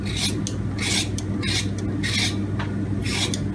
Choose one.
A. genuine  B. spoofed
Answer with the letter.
A